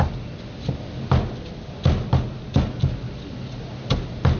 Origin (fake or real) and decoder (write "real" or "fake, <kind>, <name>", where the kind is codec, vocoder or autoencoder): real